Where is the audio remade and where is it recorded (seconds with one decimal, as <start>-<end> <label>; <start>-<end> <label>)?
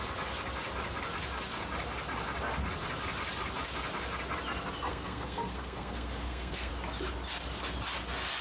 0.0-4.9 recorded; 4.9-6.7 remade; 6.7-8.4 recorded